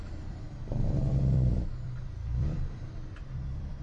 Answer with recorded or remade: remade